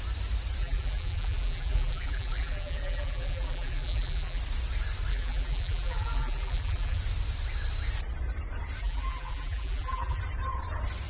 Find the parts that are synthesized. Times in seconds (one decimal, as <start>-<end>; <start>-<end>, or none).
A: 0.6-4.4; 5.1-7.0; 8.8-10.2